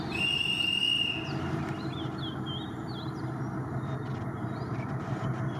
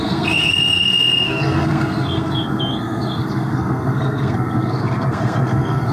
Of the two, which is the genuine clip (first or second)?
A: first